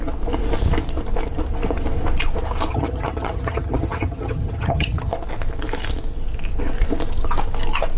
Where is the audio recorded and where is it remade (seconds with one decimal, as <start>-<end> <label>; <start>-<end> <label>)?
0.0-2.7 recorded; 2.7-5.1 remade; 5.1-8.0 recorded